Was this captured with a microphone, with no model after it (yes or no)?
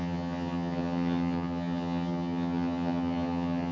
no